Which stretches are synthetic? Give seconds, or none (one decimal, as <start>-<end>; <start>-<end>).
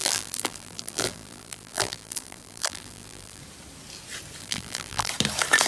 0.0-3.4; 4.4-5.1